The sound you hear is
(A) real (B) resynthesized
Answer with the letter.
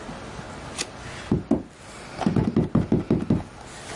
A